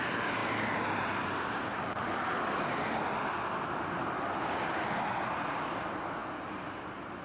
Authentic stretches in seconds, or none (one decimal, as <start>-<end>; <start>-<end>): 0.0-7.2